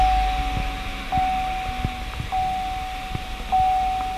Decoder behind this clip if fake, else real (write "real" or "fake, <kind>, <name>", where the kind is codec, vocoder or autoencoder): real